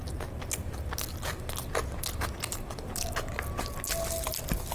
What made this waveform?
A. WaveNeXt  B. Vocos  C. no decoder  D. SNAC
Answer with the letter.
C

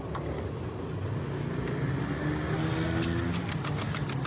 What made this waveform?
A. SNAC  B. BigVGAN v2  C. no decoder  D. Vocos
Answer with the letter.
C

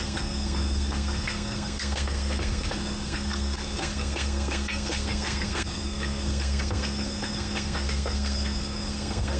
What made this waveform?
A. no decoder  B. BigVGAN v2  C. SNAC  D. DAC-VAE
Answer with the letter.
C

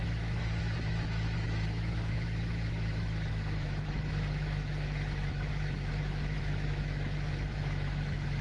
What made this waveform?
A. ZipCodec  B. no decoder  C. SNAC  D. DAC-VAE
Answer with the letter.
D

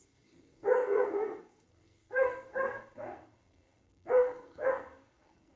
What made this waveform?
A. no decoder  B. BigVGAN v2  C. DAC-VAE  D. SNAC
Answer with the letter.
D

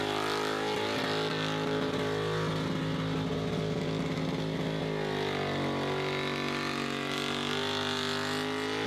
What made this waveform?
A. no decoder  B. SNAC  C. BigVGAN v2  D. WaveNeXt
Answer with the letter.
A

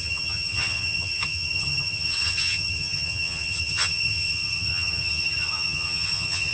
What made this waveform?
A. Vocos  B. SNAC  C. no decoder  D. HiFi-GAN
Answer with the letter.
D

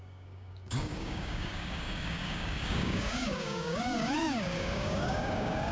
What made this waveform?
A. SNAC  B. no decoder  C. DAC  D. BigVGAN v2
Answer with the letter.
C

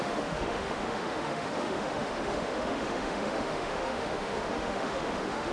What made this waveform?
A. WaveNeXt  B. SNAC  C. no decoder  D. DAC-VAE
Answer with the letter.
D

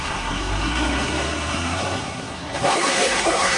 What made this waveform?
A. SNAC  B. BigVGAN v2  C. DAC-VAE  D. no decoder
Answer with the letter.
A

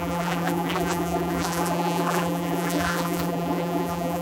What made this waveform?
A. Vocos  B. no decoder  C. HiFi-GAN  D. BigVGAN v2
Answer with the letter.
D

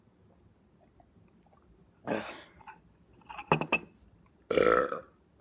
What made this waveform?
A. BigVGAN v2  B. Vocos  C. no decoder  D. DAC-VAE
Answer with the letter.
C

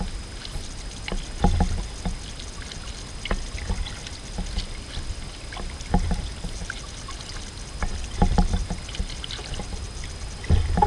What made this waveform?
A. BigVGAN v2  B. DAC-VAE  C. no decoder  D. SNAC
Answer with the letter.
C